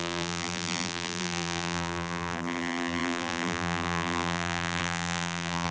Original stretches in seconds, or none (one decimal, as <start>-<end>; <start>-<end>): none